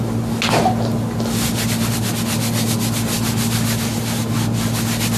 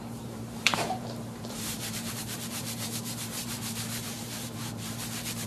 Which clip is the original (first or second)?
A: first